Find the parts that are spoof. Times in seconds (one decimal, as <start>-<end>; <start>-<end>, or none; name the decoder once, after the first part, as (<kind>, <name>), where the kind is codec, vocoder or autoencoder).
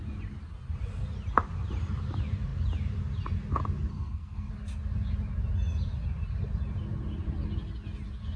3.9-4.5 (codec, SNAC)